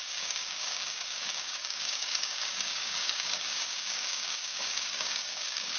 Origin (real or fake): fake